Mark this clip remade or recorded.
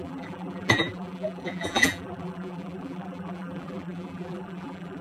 remade